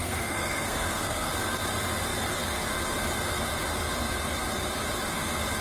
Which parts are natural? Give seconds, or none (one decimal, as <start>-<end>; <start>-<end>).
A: 1.3-5.6